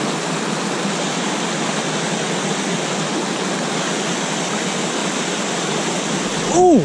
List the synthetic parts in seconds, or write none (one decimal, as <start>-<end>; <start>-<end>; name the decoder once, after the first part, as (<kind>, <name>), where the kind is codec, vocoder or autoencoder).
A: none